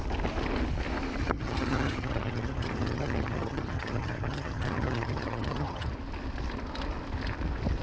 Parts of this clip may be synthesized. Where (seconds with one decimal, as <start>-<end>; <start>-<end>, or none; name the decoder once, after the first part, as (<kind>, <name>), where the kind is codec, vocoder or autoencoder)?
1.2-5.9 (vocoder, HiFi-GAN)

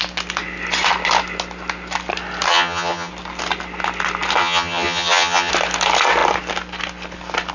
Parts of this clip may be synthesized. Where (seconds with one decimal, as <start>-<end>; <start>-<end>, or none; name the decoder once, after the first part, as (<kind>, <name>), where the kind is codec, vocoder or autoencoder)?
2.5-3.1 (vocoder, HiFi-GAN); 4.4-5.5

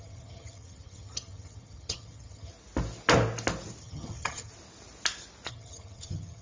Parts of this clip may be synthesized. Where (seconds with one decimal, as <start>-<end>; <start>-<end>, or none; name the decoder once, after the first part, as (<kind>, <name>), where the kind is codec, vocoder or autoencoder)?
0.0-2.5 (vocoder, HiFi-GAN); 3.8-4.5; 5.5-6.4